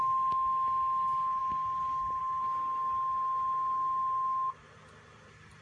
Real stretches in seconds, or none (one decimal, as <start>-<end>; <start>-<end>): 0.0-5.6